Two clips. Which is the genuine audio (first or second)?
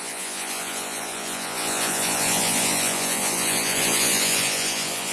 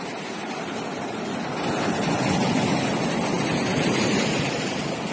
second